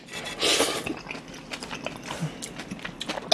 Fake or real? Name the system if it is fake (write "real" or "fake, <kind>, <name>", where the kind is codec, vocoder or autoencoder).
real